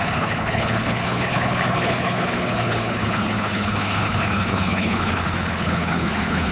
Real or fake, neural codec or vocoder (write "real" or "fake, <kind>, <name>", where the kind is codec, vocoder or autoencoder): fake, codec, HILCodec